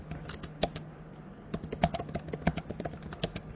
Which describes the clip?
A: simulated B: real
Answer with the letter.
B